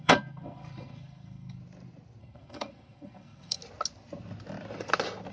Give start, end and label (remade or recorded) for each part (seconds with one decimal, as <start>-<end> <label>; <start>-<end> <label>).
0.0-1.6 remade; 1.6-2.2 recorded; 2.2-3.6 remade; 3.6-5.3 recorded